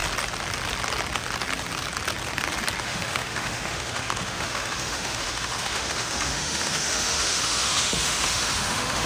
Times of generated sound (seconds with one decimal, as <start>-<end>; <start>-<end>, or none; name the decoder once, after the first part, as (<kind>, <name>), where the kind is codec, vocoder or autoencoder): 2.8-9.1 (autoencoder, DAC-VAE)